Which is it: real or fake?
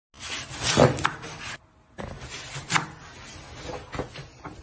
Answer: real